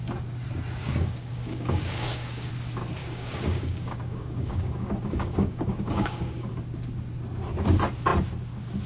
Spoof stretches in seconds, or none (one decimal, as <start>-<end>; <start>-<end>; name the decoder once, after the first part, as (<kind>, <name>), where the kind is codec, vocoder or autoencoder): 0.8-2.5 (codec, DAC); 3.0-6.5